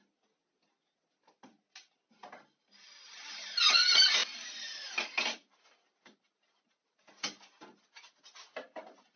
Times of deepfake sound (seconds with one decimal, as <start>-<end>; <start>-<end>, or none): none